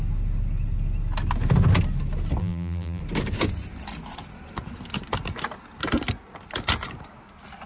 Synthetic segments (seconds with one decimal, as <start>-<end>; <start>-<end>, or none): 2.4-3.0